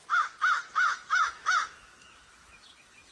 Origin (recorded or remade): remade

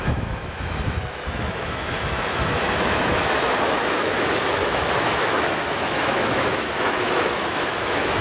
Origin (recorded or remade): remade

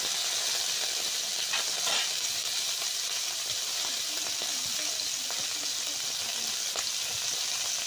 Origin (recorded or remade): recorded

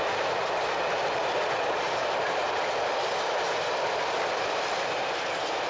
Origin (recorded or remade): recorded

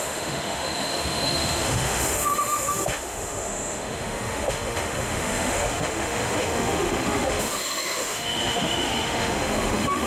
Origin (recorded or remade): remade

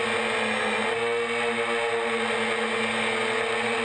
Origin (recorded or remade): recorded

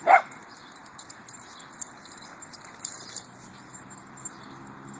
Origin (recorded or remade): recorded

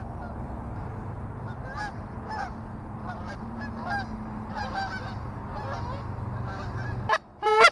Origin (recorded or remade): recorded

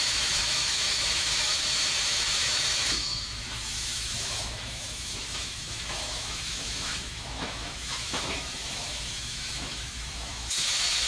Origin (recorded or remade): remade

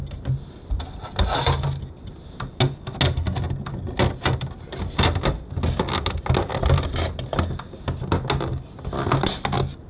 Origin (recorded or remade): recorded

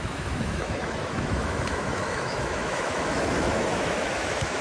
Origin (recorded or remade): remade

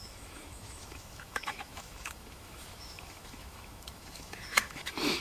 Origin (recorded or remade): remade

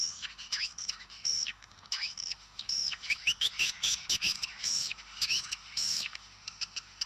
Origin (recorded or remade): remade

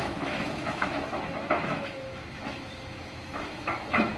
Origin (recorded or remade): remade